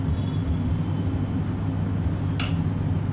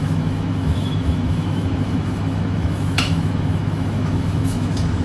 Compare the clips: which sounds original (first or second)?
first